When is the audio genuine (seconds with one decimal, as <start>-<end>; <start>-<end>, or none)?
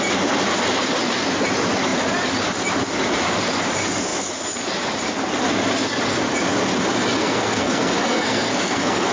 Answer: 0.0-7.2